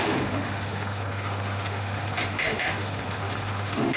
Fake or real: fake